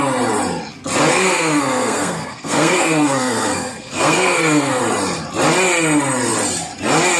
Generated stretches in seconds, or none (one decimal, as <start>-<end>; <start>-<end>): 1.1-4.8